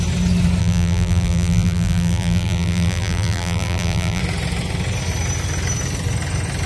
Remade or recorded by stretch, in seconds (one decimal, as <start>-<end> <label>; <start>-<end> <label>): 0.0-0.6 recorded; 0.6-4.2 remade; 4.2-6.7 recorded